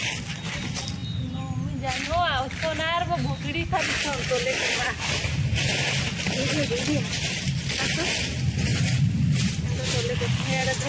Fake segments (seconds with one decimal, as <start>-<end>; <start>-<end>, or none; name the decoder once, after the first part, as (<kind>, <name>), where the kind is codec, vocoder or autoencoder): none